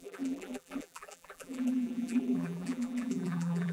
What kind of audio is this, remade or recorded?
remade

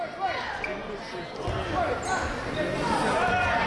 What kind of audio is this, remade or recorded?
recorded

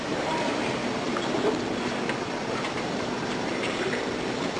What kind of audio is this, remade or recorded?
remade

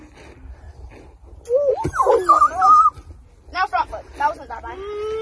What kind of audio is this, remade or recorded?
recorded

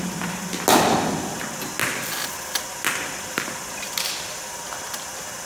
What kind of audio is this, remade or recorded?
recorded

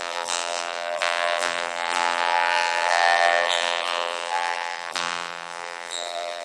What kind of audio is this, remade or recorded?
remade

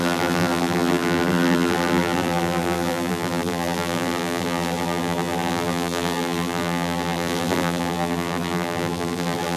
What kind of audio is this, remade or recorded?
remade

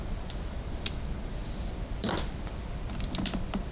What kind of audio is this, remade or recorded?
remade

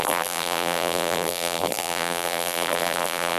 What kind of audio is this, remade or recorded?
remade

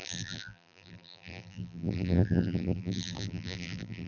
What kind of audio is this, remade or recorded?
remade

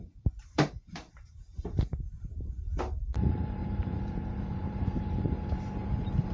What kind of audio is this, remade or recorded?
remade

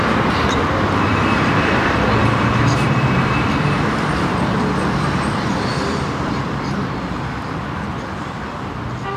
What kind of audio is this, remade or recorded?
remade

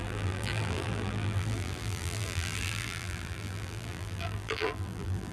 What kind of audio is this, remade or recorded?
remade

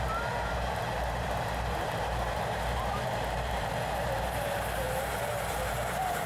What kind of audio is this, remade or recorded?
remade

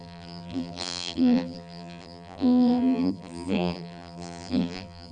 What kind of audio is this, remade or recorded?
remade